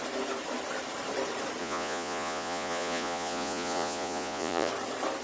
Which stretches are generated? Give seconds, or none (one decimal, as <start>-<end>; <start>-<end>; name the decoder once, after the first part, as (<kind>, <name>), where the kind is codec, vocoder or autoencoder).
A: 1.6-4.7 (vocoder, Vocos)